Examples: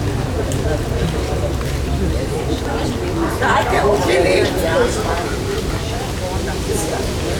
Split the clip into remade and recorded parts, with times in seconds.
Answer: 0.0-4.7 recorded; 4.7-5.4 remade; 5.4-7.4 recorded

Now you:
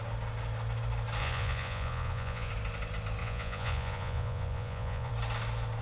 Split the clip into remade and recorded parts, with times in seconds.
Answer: 0.0-1.2 recorded; 1.2-2.5 remade; 2.5-3.2 recorded; 3.2-5.1 remade; 5.1-5.8 recorded